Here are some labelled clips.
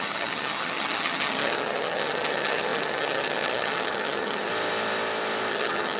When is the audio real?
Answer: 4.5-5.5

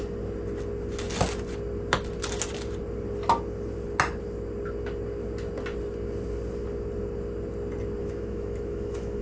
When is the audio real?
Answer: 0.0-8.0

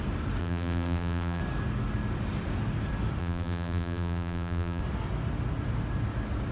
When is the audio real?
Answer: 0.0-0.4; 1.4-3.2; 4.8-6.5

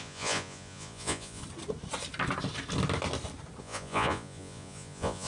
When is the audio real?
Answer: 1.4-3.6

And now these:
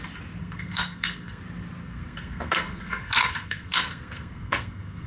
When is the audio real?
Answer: 0.0-0.4; 1.4-1.8

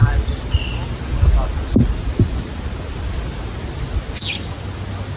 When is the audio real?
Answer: 0.0-5.2

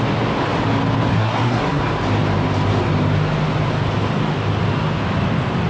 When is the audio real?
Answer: 0.0-1.1; 1.8-5.7

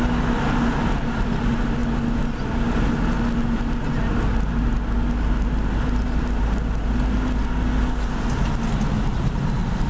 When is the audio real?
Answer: 0.0-9.9